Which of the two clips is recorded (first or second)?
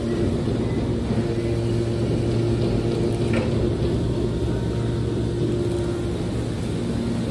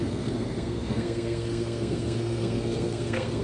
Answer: first